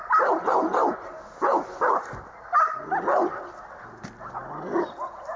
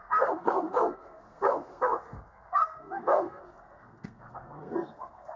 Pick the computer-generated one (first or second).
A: second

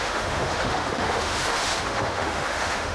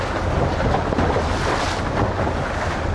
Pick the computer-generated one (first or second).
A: first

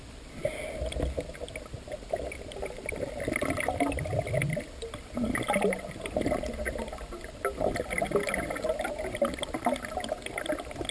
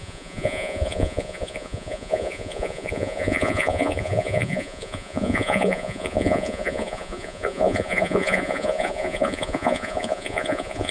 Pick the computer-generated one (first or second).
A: second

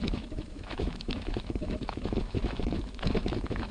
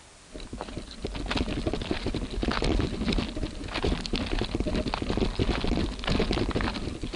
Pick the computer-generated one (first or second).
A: first